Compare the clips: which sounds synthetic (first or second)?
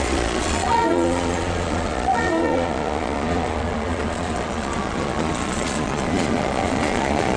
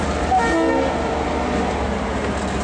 first